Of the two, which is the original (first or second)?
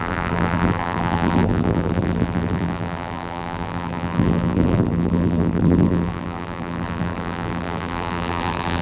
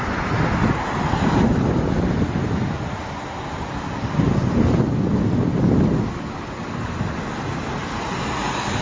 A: second